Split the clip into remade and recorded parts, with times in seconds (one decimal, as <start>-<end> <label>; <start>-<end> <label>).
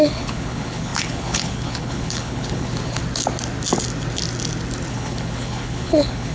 0.0-3.0 remade; 3.0-4.9 recorded; 4.9-6.3 remade